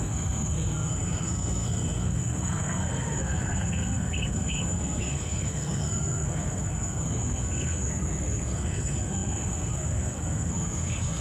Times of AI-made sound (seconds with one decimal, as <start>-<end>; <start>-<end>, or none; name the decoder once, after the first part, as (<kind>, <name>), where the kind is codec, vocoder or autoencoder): 0.0-11.2 (codec, SNAC)